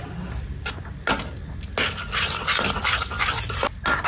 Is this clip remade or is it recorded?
recorded